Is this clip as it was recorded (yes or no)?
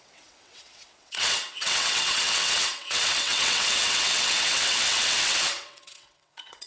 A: no